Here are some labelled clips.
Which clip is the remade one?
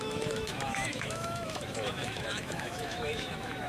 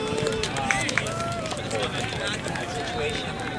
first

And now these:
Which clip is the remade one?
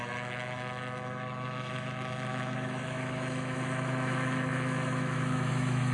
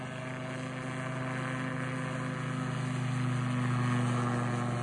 first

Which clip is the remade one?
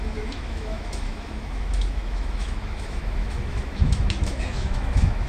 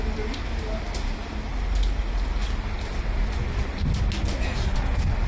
first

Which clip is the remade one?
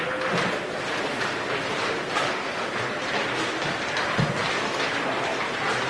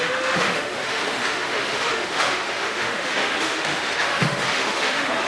second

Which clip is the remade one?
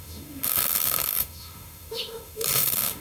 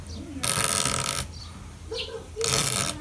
first